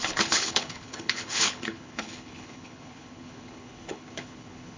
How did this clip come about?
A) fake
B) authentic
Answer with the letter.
A